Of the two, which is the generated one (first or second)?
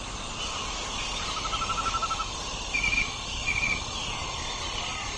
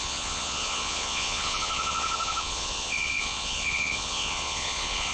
second